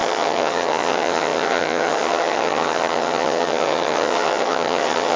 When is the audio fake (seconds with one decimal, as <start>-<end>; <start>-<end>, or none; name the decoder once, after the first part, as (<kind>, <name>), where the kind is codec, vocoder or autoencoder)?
0.0-5.2 (vocoder, HiFi-GAN)